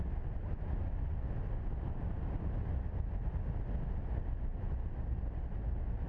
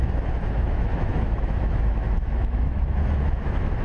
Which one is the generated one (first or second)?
second